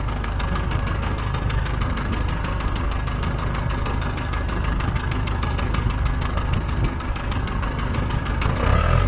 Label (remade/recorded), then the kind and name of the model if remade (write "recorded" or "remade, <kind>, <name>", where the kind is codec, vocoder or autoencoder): remade, codec, SNAC